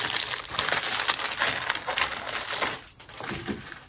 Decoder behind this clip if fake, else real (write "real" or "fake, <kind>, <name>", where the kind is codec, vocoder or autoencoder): real